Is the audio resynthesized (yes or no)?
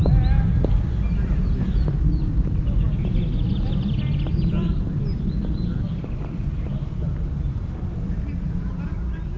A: no